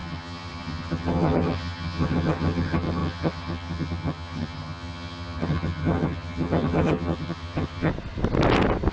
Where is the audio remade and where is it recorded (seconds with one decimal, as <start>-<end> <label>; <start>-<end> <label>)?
0.0-7.9 remade; 7.9-8.9 recorded